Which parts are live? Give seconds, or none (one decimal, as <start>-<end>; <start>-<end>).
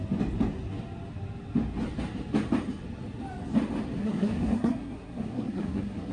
0.0-4.0